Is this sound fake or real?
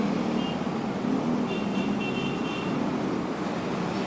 real